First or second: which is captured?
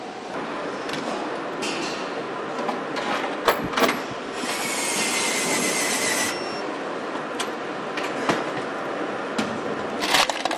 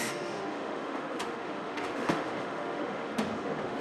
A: first